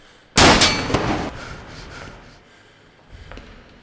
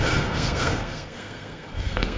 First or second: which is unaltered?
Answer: first